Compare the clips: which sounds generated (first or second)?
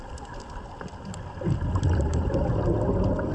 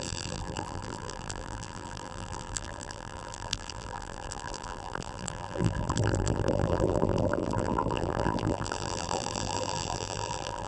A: second